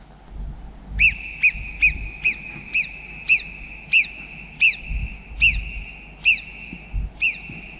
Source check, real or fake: real